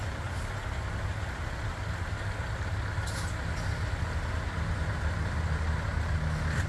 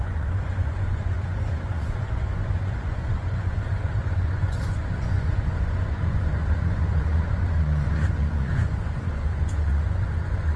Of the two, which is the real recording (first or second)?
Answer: first